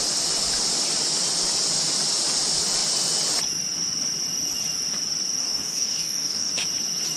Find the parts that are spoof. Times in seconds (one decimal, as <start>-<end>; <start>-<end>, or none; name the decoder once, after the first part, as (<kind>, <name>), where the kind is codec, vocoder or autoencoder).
5.4-6.5 (codec, DAC)